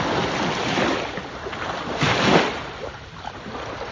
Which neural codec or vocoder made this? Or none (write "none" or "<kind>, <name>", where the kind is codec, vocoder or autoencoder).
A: none